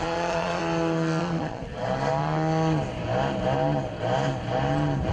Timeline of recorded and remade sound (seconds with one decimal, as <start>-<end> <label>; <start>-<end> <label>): 0.0-0.6 remade; 0.6-1.2 recorded; 1.2-1.6 remade; 1.6-5.1 recorded